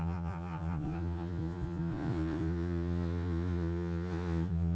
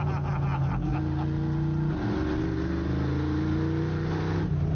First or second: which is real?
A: second